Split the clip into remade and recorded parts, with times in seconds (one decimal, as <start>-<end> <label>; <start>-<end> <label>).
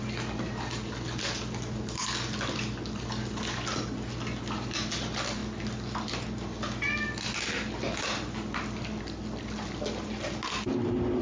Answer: 0.0-11.2 recorded